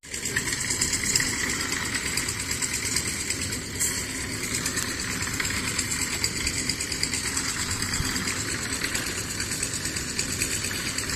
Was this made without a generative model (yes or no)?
yes